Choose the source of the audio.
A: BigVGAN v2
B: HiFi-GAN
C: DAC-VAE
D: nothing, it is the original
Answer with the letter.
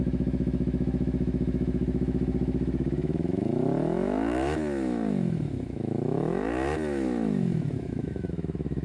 C